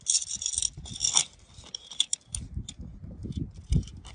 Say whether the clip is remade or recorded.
recorded